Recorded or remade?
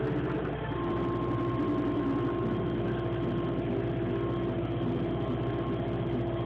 recorded